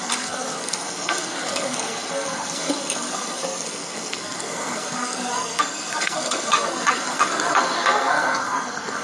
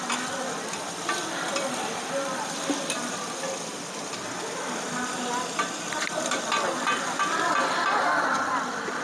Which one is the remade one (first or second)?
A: first